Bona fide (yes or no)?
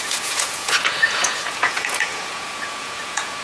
no